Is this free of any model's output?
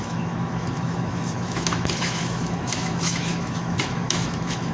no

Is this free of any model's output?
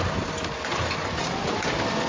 yes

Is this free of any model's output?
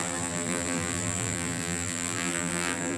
no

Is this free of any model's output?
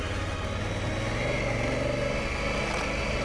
yes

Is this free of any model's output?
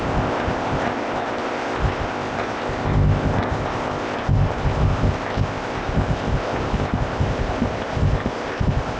no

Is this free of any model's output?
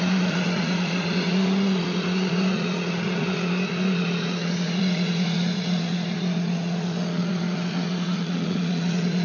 no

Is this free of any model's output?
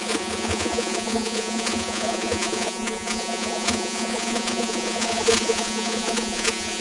no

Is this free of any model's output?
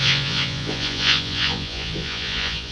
no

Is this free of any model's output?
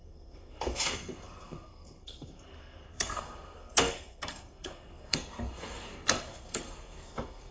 no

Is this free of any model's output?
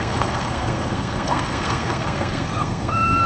no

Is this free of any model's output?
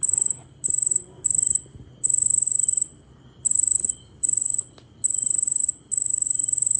yes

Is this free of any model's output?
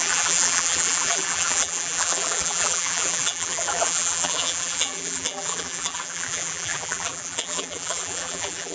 no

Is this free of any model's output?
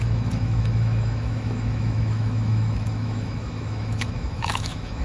no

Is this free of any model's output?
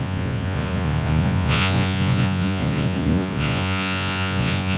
no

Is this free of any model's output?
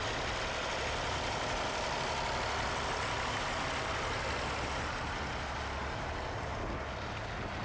yes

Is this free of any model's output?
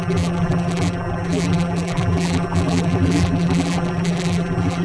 no